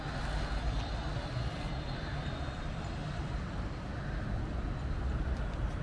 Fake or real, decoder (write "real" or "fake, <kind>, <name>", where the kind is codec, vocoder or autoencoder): real